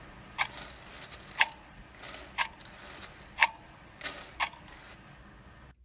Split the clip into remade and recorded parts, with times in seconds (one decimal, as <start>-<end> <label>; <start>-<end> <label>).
0.0-5.8 recorded